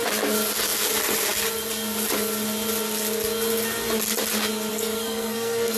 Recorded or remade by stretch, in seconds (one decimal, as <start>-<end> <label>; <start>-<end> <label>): 0.0-4.7 recorded; 4.7-5.8 remade